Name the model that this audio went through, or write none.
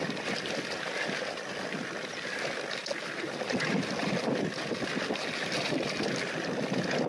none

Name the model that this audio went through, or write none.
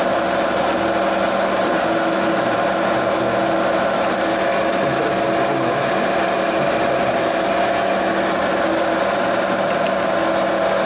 none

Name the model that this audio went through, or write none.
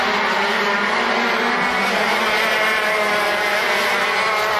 none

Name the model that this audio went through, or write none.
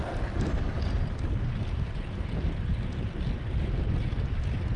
none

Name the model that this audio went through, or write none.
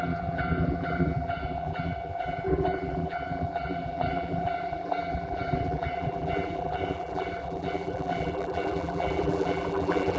vocoder, BigVGAN v2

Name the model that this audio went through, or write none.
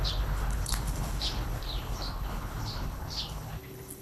codec, HILCodec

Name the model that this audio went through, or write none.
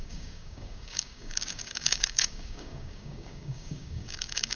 codec, DAC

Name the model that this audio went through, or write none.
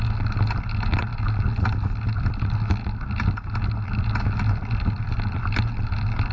none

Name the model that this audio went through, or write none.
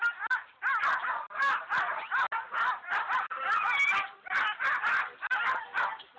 none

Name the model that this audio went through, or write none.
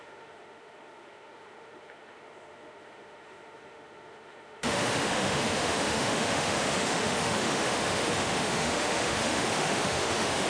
autoencoder, DAC-VAE